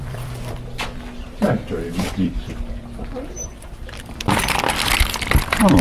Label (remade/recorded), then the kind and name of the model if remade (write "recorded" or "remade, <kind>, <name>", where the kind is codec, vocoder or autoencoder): remade, vocoder, BigVGAN v2